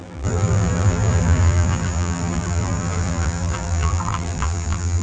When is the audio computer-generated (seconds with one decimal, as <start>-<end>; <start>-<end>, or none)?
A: 0.0-5.0